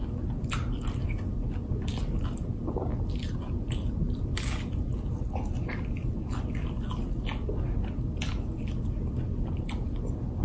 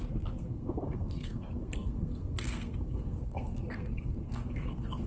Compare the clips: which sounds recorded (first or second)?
first